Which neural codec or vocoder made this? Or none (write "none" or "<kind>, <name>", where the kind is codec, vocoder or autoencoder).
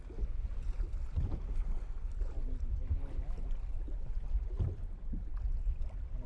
none